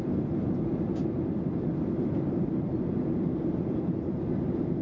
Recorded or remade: recorded